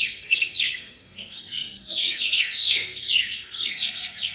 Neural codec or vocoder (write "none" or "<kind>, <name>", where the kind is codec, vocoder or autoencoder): codec, SNAC